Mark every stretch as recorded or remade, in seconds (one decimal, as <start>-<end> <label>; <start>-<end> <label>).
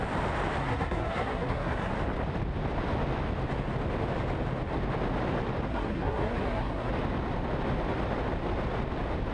0.0-0.6 recorded; 0.6-1.9 remade; 1.9-5.7 recorded; 5.7-6.9 remade; 6.9-9.3 recorded